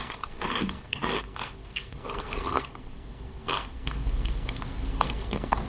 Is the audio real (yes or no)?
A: no